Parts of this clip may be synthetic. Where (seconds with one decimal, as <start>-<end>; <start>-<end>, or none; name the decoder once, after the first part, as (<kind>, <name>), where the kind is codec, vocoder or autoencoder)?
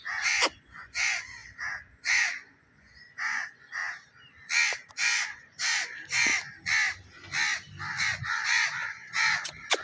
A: 0.0-3.8 (vocoder, Vocos); 4.9-6.3; 8.0-9.8